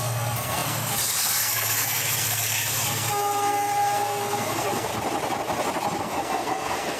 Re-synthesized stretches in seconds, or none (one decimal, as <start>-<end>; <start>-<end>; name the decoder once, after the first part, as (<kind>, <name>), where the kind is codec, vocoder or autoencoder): 0.0-4.9 (codec, SNAC); 6.0-7.0